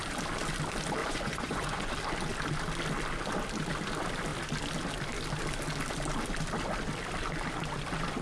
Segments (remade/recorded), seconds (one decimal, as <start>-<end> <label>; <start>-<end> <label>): 0.0-1.0 recorded; 1.0-1.9 remade; 1.9-8.2 recorded